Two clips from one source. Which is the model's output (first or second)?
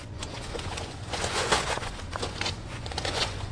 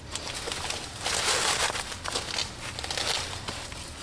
first